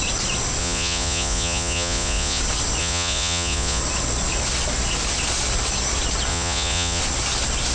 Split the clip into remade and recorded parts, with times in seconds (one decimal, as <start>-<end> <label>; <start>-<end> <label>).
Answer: 0.0-0.6 recorded; 0.6-2.4 remade; 2.4-2.8 recorded; 2.8-3.8 remade; 3.8-6.3 recorded; 6.3-7.0 remade; 7.0-7.7 recorded